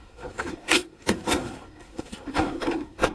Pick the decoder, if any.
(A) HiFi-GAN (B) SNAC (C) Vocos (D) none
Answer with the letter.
B